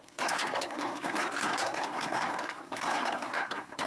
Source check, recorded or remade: remade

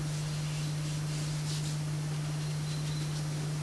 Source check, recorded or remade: recorded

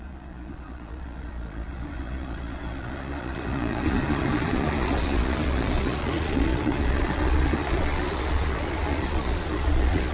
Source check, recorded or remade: remade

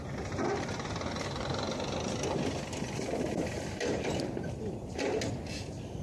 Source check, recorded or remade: recorded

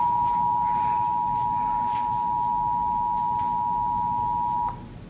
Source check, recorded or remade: recorded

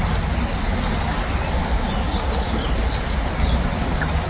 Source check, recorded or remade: recorded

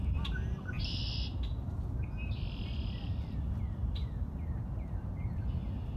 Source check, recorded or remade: recorded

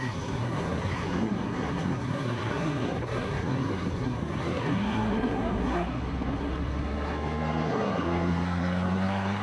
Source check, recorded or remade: remade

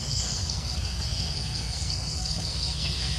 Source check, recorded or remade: remade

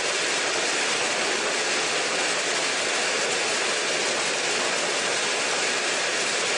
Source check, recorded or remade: recorded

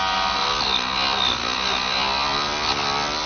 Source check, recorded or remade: recorded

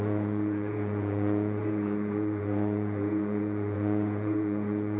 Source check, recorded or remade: remade